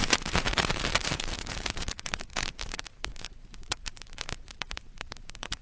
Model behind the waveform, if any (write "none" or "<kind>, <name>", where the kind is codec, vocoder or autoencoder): vocoder, BigVGAN v2